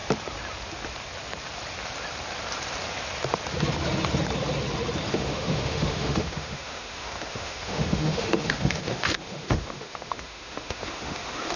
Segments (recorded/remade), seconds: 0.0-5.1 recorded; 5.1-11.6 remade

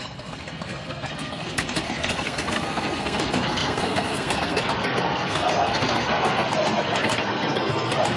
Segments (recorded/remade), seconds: 0.0-8.2 remade

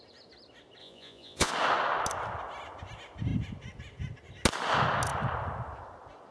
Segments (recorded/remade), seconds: 0.0-0.8 recorded; 0.8-1.5 remade; 1.5-6.3 recorded